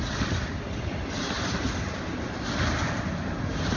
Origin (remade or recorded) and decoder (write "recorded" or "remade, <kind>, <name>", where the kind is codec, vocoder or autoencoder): recorded